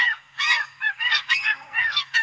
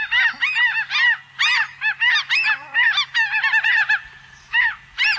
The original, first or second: second